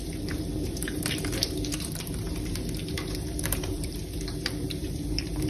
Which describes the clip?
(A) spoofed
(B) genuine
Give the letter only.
A